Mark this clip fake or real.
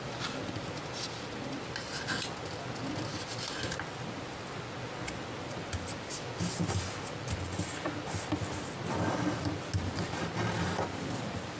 real